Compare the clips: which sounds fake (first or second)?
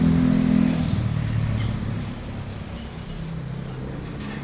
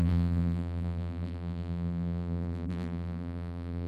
second